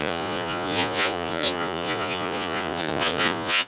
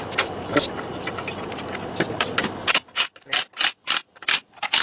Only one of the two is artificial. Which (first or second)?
first